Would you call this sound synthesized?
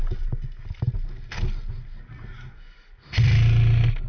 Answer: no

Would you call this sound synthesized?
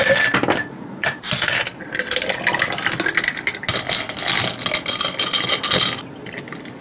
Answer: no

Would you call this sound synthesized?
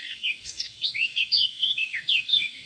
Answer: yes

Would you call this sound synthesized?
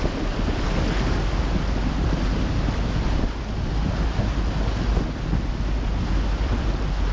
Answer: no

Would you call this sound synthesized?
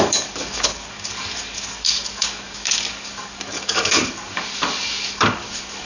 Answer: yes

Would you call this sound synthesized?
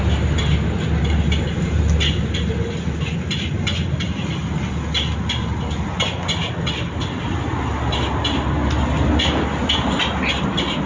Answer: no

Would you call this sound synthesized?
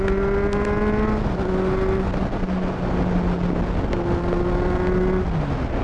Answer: no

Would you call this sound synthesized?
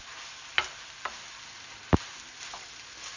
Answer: no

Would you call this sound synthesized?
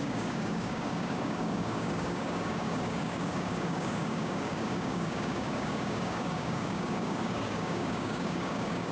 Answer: yes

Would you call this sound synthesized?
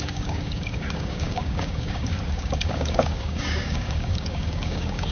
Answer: yes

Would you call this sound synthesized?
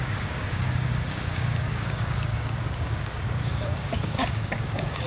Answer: yes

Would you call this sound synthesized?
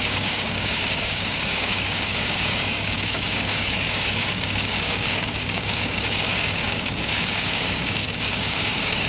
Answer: yes